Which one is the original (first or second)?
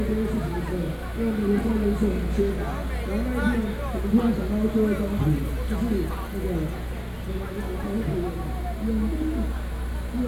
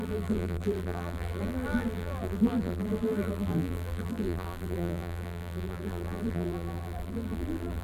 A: first